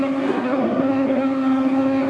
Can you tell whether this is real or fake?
fake